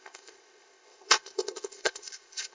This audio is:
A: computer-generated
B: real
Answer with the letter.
A